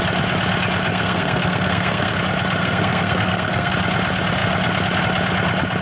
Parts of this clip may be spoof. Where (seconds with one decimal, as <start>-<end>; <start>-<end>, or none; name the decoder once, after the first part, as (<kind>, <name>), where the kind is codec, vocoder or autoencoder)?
0.9-2.2 (codec, SNAC); 2.6-3.7